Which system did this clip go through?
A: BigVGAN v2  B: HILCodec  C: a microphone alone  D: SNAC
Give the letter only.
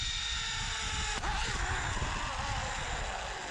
C